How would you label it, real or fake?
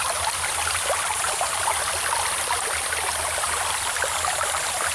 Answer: real